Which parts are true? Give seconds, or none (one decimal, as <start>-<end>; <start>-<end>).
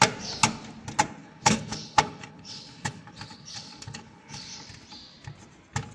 0.0-1.2; 4.7-5.9